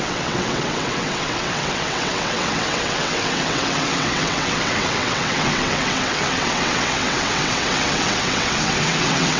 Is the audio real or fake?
fake